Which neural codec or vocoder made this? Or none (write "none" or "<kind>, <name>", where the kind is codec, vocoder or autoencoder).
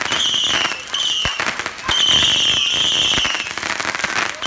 none